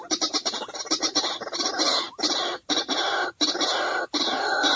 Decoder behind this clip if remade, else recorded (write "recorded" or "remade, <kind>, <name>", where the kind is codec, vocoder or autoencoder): recorded